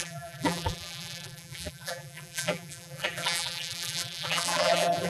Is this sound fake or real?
fake